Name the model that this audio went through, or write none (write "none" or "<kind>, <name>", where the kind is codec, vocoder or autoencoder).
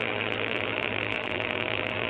vocoder, BigVGAN v2